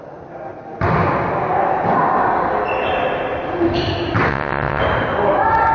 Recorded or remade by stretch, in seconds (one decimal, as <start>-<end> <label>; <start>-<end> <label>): 0.0-4.3 recorded; 4.3-4.8 remade; 4.8-5.7 recorded